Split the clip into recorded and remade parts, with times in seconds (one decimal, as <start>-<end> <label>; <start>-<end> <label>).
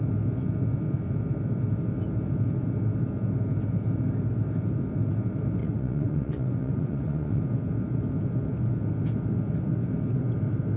0.0-5.6 recorded; 5.6-7.4 remade; 7.4-10.8 recorded